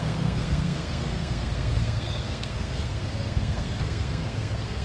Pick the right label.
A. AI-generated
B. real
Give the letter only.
A